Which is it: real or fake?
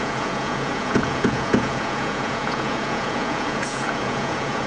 fake